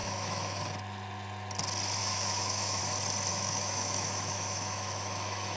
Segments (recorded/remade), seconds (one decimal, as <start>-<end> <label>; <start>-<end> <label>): 0.0-0.6 remade; 0.6-2.0 recorded; 2.0-2.8 remade; 2.8-3.3 recorded; 3.3-5.6 remade